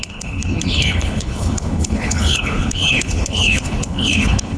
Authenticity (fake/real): fake